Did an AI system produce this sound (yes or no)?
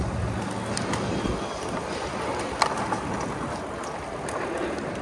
no